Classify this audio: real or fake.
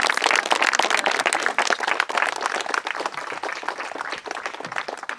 real